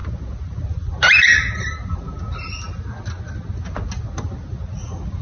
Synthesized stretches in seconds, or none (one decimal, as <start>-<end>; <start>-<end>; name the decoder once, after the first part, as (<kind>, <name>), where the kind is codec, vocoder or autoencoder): none